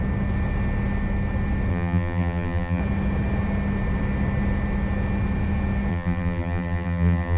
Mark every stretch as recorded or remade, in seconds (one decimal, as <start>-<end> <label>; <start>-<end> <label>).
0.0-1.7 recorded; 1.7-2.8 remade; 2.8-5.9 recorded; 5.9-7.4 remade

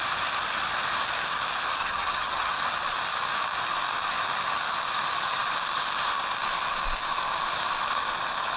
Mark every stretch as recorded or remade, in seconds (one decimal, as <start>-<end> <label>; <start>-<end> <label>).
0.0-1.8 recorded; 1.8-2.5 remade; 2.5-8.6 recorded

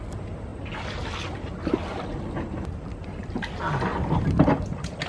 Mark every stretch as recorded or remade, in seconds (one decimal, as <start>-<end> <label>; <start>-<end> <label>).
0.0-3.9 recorded; 3.9-4.5 remade; 4.5-5.1 recorded

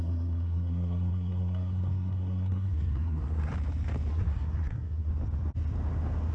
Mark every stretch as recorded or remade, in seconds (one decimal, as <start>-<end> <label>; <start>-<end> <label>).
0.0-3.5 remade; 3.5-4.1 recorded; 4.1-5.1 remade; 5.1-6.3 recorded